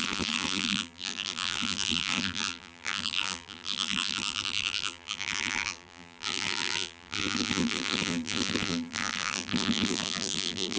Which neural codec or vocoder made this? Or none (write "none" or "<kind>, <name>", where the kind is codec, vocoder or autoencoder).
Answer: vocoder, BigVGAN v2